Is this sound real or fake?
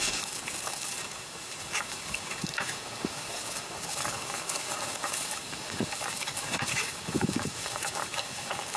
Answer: fake